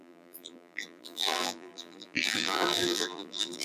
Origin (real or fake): fake